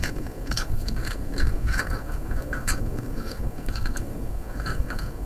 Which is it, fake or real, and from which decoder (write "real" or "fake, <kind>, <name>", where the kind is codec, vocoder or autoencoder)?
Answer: fake, codec, SNAC